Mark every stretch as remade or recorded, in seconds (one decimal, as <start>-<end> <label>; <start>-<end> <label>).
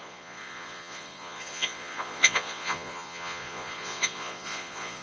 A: 0.0-5.0 remade